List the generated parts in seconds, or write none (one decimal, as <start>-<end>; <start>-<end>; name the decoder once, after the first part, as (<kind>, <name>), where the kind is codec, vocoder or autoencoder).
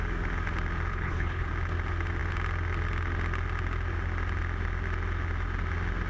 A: 0.9-1.5 (codec, HILCodec)